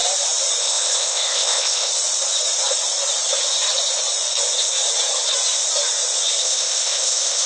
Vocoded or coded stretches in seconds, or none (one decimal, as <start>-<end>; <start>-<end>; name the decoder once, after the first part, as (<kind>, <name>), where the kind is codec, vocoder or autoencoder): 0.6-1.9 (codec, ZipCodec); 6.4-7.5

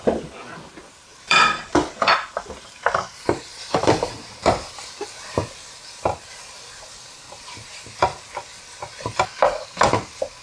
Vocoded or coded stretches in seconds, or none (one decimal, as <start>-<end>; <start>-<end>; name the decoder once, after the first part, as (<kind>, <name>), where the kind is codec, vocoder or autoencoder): 1.1-4.9 (vocoder, BigVGAN v2)

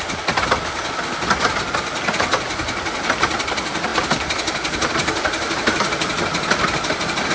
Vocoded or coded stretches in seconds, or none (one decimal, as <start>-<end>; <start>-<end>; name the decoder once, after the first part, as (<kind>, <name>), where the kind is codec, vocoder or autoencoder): none

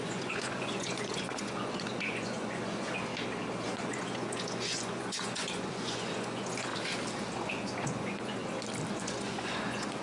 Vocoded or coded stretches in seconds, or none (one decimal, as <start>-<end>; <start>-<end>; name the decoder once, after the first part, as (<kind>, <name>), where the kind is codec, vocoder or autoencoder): 0.0-3.1 (vocoder, Vocos); 3.6-6.7; 7.3-8.4; 9.0-10.0

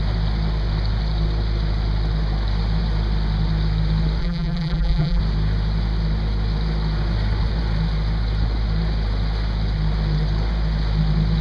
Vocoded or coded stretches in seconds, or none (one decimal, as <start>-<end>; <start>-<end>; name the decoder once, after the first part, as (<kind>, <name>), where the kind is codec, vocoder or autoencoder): 4.2-5.2 (vocoder, BigVGAN v2)

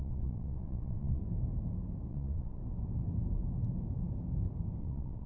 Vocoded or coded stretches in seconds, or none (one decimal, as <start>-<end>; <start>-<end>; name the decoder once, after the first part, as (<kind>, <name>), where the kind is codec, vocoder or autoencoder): 0.0-1.2 (vocoder, WaveNeXt); 2.1-2.6; 4.8-5.3